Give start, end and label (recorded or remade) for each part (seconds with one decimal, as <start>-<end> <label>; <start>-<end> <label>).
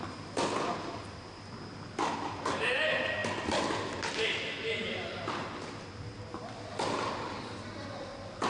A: 0.0-8.5 recorded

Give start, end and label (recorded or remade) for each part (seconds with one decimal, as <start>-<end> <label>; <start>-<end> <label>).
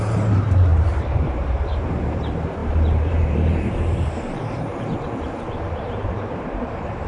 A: 0.0-4.7 remade; 4.7-5.6 recorded; 5.6-7.1 remade